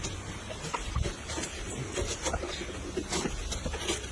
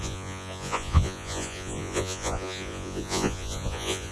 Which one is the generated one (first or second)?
second